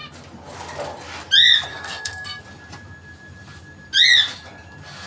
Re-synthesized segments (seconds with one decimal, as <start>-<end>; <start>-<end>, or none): 1.7-2.4